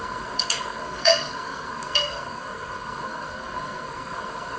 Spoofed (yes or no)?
yes